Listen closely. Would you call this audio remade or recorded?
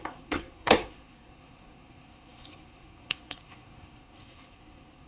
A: remade